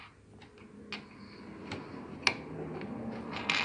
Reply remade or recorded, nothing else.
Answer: recorded